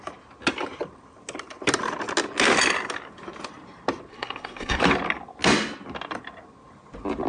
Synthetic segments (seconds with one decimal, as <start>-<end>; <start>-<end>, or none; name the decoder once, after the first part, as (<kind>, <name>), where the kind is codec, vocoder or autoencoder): 4.1-4.8 (codec, SNAC)